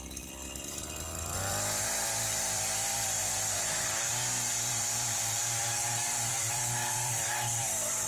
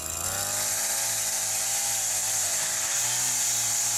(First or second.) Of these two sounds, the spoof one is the first